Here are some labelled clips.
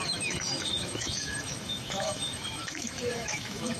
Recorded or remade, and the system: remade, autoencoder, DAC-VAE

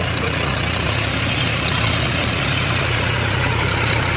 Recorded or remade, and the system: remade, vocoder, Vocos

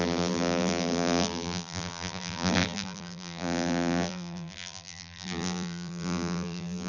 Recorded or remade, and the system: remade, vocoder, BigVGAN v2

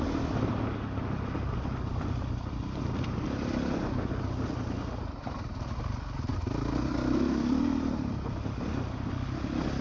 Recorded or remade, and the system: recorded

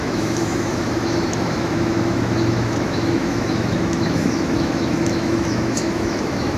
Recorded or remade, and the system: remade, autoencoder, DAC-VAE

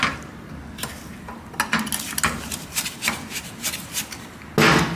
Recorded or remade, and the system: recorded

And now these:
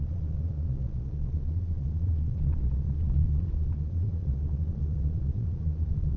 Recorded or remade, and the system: remade, vocoder, Vocos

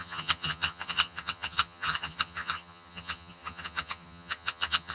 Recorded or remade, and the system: remade, vocoder, HiFi-GAN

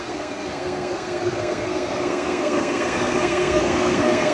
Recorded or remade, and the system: remade, codec, SNAC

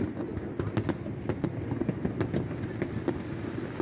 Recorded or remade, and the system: recorded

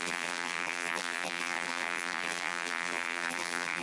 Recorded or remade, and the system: remade, vocoder, BigVGAN v2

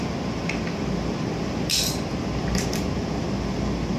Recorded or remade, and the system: recorded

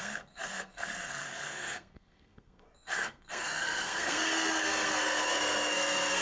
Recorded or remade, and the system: remade, codec, SNAC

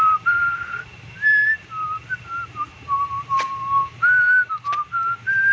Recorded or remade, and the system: recorded